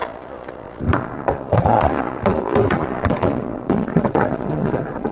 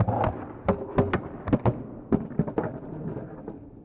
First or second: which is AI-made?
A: first